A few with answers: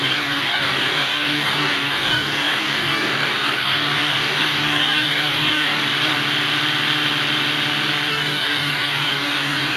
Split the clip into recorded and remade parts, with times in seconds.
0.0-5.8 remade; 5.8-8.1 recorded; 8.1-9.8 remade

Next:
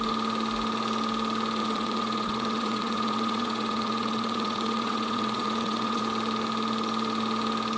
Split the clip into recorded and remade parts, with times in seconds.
0.0-1.6 recorded; 1.6-6.0 remade; 6.0-7.8 recorded

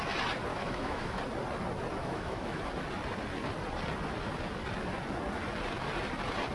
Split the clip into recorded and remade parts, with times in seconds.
0.0-0.5 recorded; 0.5-1.2 remade; 1.2-2.0 recorded; 2.0-2.6 remade; 2.6-6.5 recorded

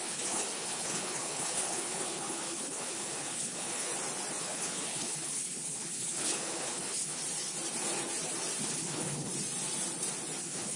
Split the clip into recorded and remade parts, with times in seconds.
0.0-3.9 remade; 3.9-4.4 recorded; 4.4-7.2 remade; 7.2-8.6 recorded; 8.6-9.3 remade; 9.3-10.4 recorded; 10.4-10.8 remade

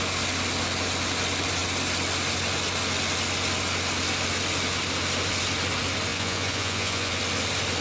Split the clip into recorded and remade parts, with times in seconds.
0.0-6.1 recorded; 6.1-7.1 remade; 7.1-7.8 recorded